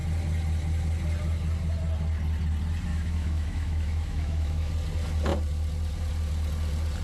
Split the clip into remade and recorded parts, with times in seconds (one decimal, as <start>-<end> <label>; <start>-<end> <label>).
0.0-2.9 recorded; 2.9-4.7 remade; 4.7-7.0 recorded